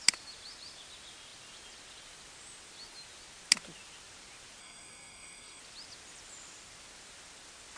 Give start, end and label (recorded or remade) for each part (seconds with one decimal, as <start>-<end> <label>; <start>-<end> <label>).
0.0-4.6 recorded; 4.6-5.6 remade; 5.6-7.8 recorded